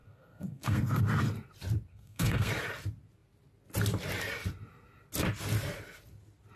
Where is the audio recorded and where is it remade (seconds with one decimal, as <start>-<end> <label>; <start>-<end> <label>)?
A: 0.0-1.0 remade; 1.0-1.9 recorded; 1.9-2.5 remade; 2.5-6.6 recorded